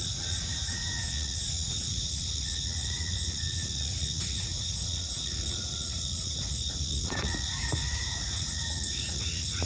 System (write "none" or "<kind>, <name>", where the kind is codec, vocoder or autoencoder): vocoder, Vocos